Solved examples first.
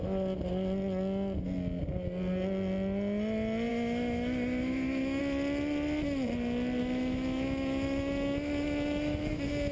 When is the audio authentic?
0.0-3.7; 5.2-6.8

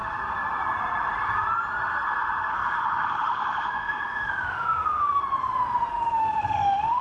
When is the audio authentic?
0.0-2.5; 5.2-5.9

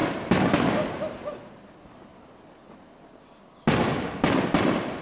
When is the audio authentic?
0.0-5.0

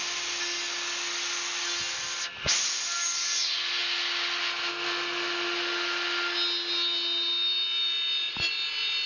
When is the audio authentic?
0.0-9.1